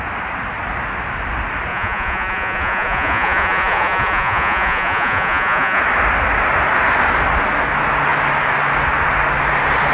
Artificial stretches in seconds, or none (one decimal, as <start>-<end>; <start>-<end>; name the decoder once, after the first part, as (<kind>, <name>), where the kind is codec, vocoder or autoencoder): 1.7-5.8 (vocoder, Vocos)